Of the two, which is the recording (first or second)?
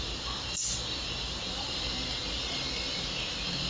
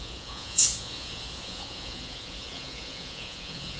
first